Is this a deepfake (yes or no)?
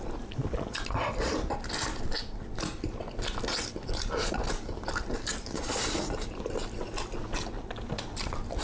no